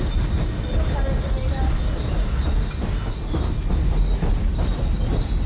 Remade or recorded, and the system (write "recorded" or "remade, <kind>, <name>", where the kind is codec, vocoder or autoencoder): recorded